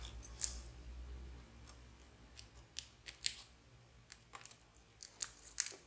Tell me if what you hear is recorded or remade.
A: recorded